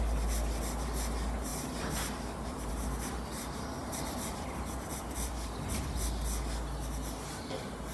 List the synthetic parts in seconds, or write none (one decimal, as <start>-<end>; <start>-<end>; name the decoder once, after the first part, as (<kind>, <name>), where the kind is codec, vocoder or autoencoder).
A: 1.5-2.7 (vocoder, BigVGAN v2); 3.8-5.8